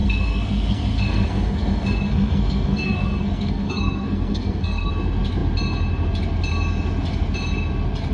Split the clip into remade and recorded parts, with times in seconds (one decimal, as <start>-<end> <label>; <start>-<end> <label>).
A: 0.0-4.9 remade; 4.9-8.1 recorded